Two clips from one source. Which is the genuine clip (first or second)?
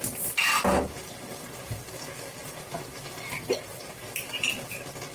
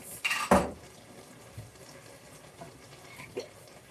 first